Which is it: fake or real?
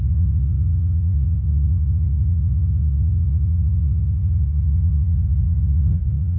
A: fake